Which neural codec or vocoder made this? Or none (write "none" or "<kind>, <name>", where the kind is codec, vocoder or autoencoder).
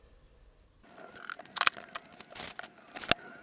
none